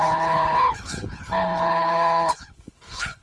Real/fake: fake